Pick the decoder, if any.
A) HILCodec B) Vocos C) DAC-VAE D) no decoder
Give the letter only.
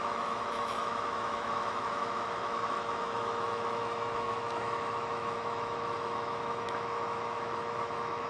C